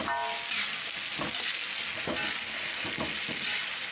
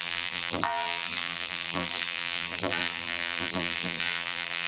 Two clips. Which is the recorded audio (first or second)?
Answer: first